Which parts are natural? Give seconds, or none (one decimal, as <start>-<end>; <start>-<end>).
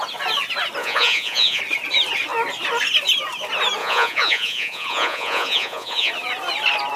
0.0-0.8; 1.6-3.8; 6.1-7.0